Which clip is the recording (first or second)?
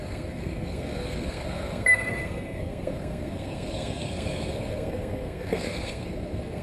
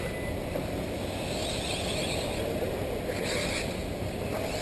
second